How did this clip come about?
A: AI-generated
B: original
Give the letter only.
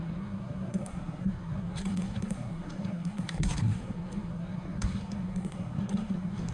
A